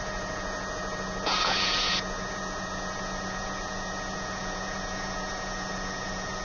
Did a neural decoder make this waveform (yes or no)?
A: yes